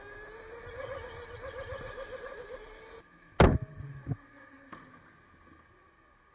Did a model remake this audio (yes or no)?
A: no